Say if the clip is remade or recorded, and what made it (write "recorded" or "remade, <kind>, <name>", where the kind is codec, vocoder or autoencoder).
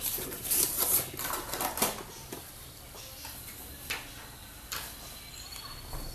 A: recorded